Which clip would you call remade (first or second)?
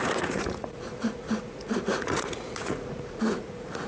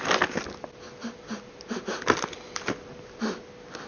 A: first